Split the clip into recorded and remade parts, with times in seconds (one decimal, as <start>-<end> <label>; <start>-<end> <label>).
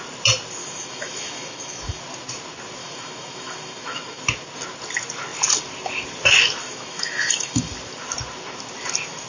0.0-0.6 recorded; 0.6-2.0 remade; 2.0-2.8 recorded; 2.8-4.2 remade; 4.2-6.6 recorded; 6.6-7.7 remade; 7.7-9.3 recorded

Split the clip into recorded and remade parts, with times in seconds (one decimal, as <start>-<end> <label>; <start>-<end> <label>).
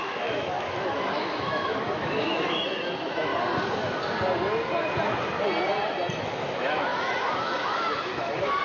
0.0-3.3 remade; 3.3-6.2 recorded; 6.2-6.9 remade; 6.9-7.4 recorded; 7.4-8.6 remade